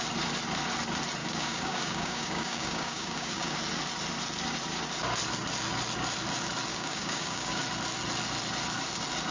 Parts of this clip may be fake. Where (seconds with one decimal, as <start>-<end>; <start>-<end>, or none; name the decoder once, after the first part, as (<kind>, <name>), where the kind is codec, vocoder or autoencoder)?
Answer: 1.2-3.6 (codec, DAC); 6.7-7.6